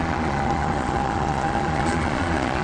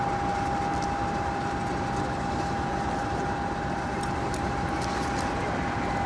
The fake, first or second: first